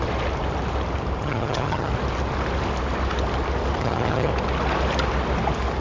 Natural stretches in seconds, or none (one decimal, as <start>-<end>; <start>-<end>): 0.0-1.2; 1.9-3.8; 4.3-5.8